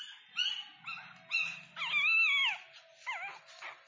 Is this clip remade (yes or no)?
no